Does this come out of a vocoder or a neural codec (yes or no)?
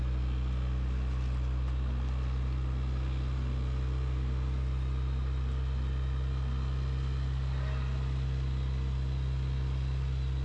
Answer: no